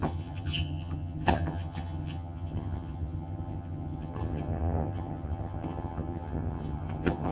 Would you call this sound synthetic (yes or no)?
yes